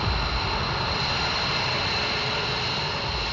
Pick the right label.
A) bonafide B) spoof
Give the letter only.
A